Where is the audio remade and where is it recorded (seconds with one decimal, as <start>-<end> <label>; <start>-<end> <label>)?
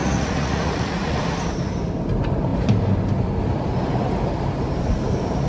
0.0-1.2 remade; 1.2-5.5 recorded